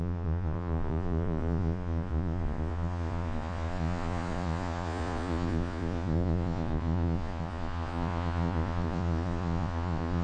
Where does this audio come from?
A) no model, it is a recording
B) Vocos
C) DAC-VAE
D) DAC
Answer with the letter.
B